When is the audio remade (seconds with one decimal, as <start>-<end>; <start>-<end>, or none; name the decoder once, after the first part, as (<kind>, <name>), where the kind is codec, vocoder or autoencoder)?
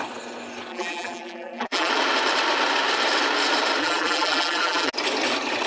0.7-1.9 (vocoder, BigVGAN v2); 3.8-4.9